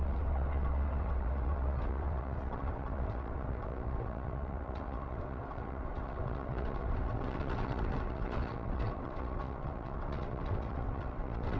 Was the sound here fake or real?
fake